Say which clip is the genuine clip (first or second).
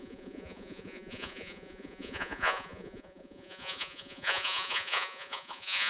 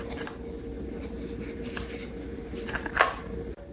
second